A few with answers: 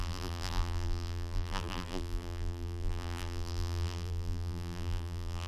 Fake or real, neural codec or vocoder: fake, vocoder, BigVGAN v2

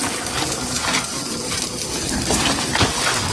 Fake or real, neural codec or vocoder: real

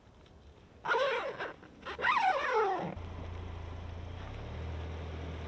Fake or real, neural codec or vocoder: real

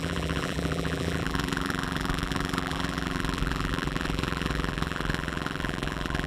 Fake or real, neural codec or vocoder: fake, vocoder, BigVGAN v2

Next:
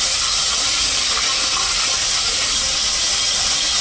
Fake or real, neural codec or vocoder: fake, vocoder, BigVGAN v2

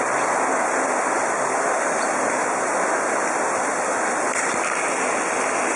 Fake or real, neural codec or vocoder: fake, vocoder, BigVGAN v2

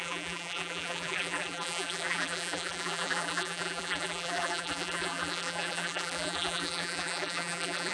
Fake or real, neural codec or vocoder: fake, vocoder, BigVGAN v2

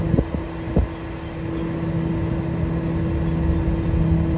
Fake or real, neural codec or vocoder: real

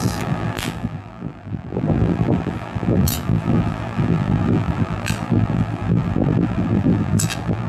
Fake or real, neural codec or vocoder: fake, vocoder, BigVGAN v2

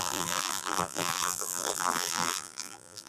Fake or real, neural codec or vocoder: fake, vocoder, BigVGAN v2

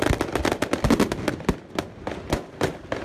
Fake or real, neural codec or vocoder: real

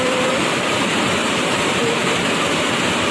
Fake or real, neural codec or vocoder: fake, vocoder, BigVGAN v2